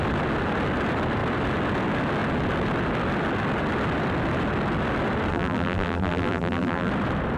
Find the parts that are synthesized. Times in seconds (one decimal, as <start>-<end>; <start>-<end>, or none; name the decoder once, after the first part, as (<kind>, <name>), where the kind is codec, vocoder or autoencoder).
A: 5.3-6.9 (vocoder, BigVGAN v2)